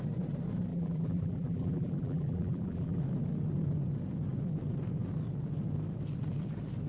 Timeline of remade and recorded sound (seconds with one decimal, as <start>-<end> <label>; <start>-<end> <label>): 0.0-0.7 recorded; 0.7-3.0 remade; 3.0-6.9 recorded

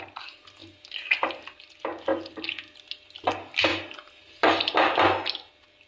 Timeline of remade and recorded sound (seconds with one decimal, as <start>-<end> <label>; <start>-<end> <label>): 0.0-5.9 recorded

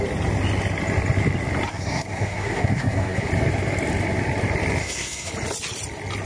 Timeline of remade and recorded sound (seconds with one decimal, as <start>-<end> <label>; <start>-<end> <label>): 0.0-1.7 recorded; 1.7-3.3 remade; 3.3-4.8 recorded; 4.8-5.3 remade; 5.3-6.3 recorded

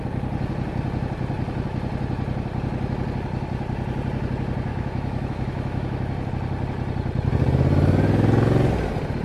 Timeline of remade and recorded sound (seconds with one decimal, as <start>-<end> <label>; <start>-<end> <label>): 0.0-4.7 recorded; 4.7-6.3 remade; 6.3-9.2 recorded

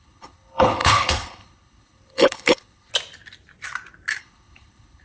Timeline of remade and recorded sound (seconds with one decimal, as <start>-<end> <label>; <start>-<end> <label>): 0.0-2.9 remade; 2.9-4.2 recorded; 4.2-5.0 remade